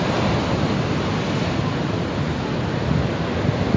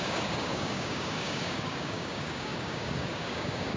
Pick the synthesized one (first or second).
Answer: second